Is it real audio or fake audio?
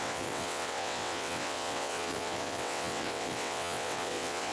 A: fake